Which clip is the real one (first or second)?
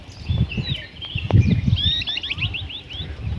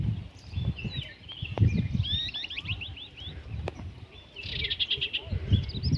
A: second